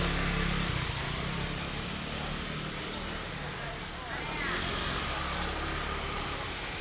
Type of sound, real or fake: real